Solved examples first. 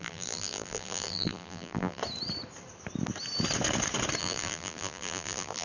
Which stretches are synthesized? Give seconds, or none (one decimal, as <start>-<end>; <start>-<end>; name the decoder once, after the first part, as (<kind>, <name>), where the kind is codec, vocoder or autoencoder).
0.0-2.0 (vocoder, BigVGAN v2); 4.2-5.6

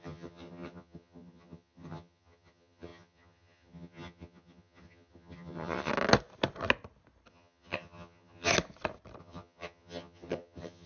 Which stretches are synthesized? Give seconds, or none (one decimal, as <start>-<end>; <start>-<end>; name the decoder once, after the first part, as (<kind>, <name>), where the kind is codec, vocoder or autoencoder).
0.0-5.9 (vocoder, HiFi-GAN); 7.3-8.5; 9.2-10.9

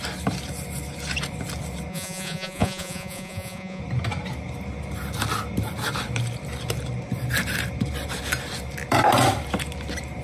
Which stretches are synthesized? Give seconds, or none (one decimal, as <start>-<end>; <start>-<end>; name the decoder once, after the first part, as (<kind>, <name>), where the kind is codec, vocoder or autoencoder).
1.9-3.8 (vocoder, Vocos)

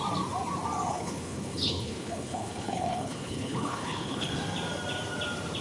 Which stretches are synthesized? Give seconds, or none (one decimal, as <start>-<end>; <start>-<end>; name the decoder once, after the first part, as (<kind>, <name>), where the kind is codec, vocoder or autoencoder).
0.9-4.3 (codec, HILCodec)

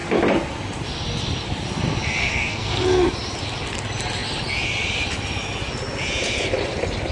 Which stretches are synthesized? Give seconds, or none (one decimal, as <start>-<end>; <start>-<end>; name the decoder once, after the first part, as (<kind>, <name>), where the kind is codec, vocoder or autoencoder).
2.2-3.1 (codec, SNAC)

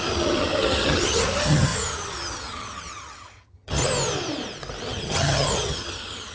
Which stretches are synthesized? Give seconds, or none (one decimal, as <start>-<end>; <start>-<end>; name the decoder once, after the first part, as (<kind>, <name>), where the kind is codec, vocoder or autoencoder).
0.0-3.8 (vocoder, HiFi-GAN); 4.9-6.3